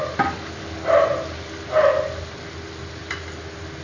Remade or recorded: recorded